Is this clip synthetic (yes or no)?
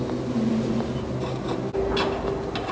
no